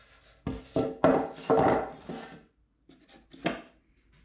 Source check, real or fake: real